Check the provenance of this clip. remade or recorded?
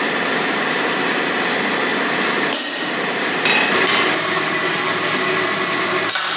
recorded